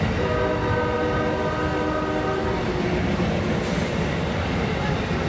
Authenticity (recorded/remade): recorded